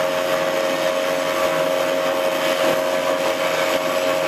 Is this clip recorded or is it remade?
recorded